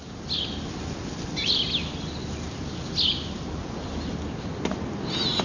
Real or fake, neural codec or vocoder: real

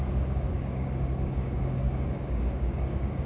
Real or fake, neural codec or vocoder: fake, codec, DAC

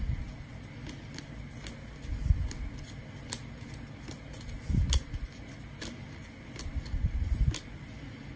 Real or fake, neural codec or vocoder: real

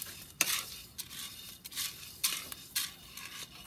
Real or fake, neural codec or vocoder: real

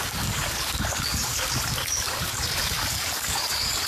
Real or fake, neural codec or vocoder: fake, codec, DAC